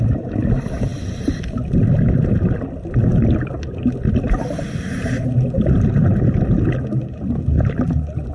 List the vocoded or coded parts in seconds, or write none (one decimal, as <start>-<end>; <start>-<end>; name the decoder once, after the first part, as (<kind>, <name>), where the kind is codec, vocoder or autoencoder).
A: none